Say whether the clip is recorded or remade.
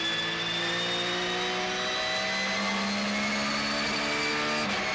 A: recorded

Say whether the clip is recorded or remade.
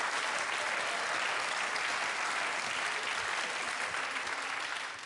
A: recorded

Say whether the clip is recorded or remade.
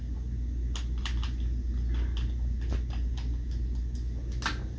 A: recorded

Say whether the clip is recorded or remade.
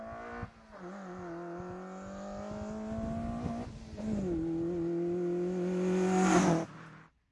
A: recorded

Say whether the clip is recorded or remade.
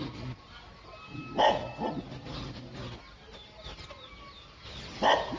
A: recorded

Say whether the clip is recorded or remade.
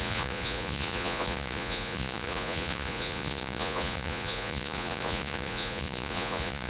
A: remade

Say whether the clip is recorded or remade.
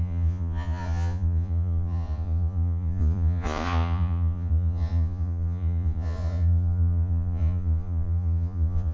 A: remade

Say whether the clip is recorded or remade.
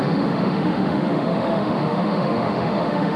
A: remade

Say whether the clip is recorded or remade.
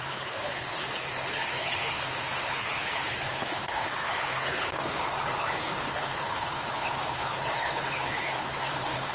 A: remade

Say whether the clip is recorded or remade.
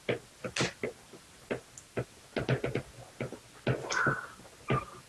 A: recorded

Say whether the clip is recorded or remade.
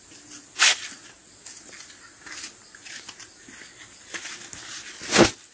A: recorded